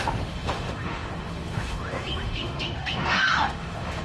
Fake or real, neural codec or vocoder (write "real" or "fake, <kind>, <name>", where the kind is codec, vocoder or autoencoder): fake, autoencoder, DAC-VAE